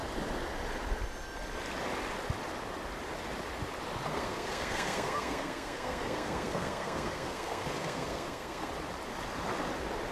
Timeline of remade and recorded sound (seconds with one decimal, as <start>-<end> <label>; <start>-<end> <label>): 0.0-4.1 recorded; 4.1-8.7 remade; 8.7-10.1 recorded